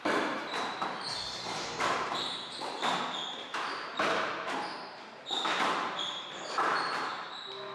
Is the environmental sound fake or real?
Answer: fake